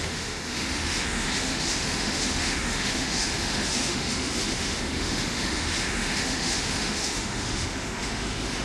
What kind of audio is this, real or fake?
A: fake